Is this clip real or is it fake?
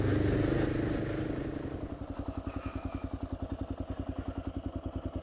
real